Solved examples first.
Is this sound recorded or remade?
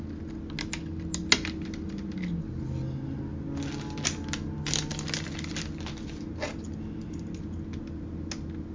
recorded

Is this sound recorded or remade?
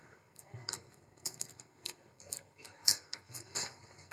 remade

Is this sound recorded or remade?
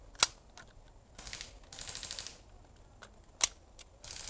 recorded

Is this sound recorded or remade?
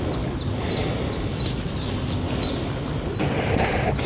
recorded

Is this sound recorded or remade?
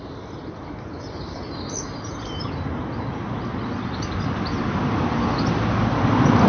recorded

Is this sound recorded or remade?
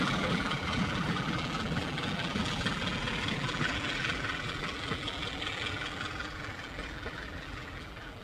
remade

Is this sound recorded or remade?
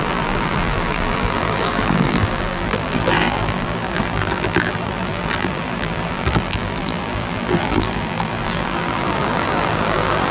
remade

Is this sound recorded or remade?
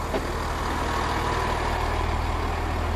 recorded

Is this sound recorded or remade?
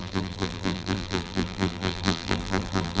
remade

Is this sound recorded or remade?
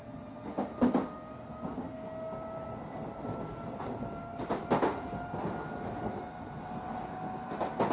recorded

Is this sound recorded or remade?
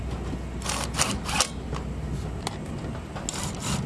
recorded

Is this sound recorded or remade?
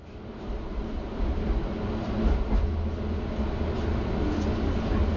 recorded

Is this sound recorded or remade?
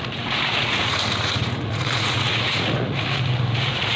remade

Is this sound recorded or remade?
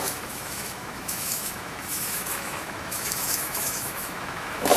remade